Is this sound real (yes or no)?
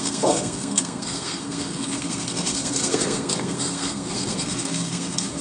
no